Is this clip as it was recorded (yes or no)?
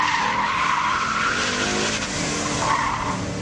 yes